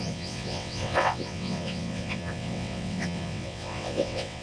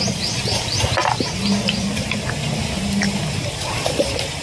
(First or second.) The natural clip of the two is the second